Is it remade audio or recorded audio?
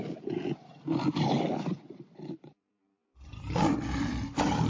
recorded